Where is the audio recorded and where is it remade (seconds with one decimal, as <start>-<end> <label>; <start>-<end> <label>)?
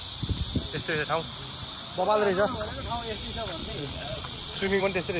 0.0-3.6 recorded; 3.6-4.8 remade; 4.8-5.2 recorded